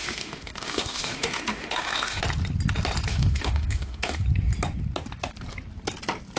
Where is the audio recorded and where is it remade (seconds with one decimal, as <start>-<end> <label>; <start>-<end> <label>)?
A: 0.0-2.2 remade; 2.2-3.1 recorded; 3.1-4.2 remade; 4.2-6.4 recorded